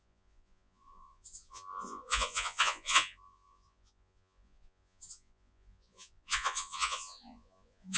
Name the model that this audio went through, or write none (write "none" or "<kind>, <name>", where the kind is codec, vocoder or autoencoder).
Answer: vocoder, Vocos